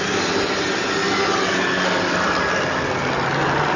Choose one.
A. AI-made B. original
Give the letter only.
B